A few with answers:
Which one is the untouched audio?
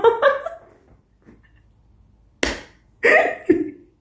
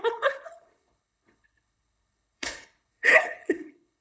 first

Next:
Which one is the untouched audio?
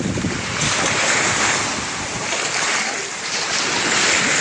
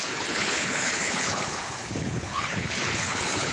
first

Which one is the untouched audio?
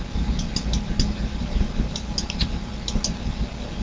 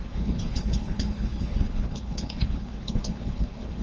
first